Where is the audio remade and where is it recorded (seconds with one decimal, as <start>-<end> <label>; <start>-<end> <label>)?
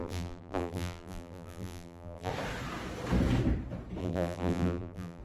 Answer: 0.0-2.3 remade; 2.3-4.0 recorded; 4.0-5.2 remade